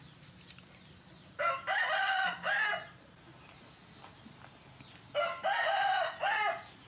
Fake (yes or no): no